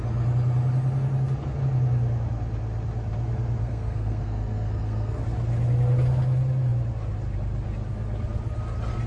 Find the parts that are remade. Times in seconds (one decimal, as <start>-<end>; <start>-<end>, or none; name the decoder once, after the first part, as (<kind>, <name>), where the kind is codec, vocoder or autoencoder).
3.6-5.2 (codec, SNAC)

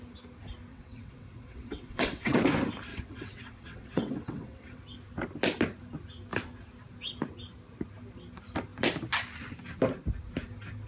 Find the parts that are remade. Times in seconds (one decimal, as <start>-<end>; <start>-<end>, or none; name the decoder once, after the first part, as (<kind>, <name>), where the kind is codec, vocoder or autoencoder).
0.7-2.4 (vocoder, WaveNeXt); 2.9-4.8

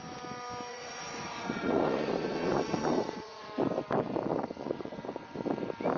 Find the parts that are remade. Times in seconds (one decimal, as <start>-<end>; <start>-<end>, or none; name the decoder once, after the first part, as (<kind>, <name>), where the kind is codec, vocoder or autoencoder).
0.7-3.5 (vocoder, Vocos); 4.3-5.2

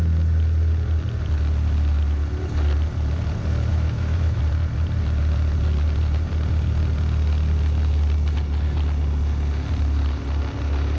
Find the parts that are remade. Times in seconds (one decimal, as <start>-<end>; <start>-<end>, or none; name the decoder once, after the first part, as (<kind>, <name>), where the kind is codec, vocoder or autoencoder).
3.7-4.4 (autoencoder, DAC-VAE)

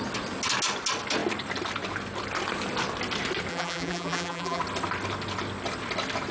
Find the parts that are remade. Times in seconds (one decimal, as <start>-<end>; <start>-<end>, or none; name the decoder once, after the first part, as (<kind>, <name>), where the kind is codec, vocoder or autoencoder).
3.5-4.6 (vocoder, BigVGAN v2)

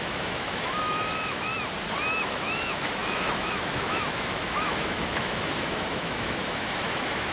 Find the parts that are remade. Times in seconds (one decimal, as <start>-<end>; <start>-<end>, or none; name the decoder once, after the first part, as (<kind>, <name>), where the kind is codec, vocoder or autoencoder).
0.0-1.5 (autoencoder, DAC-VAE); 2.1-7.3

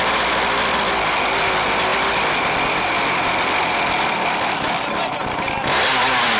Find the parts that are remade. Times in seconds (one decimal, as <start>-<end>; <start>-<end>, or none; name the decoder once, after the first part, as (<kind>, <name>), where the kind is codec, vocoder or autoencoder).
none

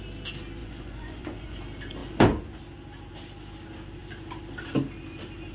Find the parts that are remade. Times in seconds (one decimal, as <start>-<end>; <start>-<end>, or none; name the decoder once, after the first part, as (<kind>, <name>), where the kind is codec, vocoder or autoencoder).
0.6-1.6 (vocoder, Vocos)